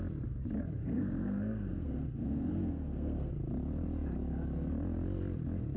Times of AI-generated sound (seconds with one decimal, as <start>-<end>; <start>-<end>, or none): 0.8-3.3